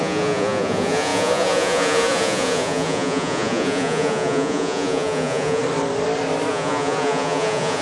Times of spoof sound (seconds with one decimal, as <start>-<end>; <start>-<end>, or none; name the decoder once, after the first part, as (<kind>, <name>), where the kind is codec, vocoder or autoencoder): 0.0-5.6 (vocoder, Vocos); 6.5-7.8